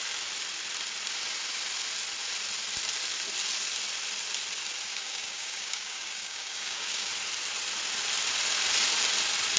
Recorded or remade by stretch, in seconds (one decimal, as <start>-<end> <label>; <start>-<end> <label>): 0.0-4.9 recorded; 4.9-7.1 remade; 7.1-9.6 recorded